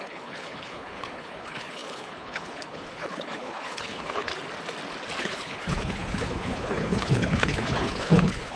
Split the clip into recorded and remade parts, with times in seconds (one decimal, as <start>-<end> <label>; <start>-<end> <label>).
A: 0.0-4.3 remade; 4.3-5.2 recorded; 5.2-8.6 remade